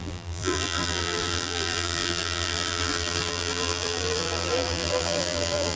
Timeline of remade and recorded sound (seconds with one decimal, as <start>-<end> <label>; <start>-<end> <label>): 0.0-5.8 remade